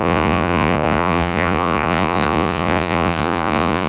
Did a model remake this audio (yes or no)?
yes